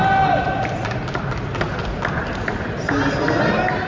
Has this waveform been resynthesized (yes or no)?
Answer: no